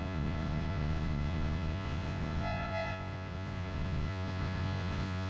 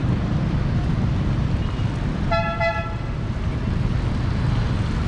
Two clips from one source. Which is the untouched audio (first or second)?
second